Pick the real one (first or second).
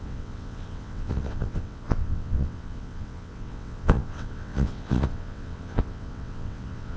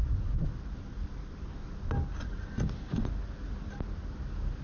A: second